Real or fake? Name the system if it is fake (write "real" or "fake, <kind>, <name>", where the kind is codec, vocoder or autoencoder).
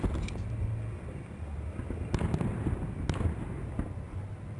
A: real